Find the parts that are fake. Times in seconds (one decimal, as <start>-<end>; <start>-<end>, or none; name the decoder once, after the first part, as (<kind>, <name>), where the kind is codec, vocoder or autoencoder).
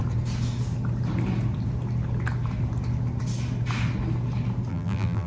4.7-5.3 (vocoder, BigVGAN v2)